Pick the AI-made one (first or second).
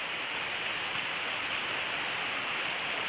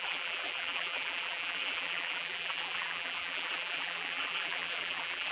second